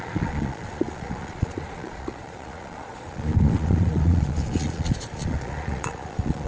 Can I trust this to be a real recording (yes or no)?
no